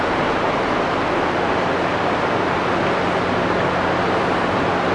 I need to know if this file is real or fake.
real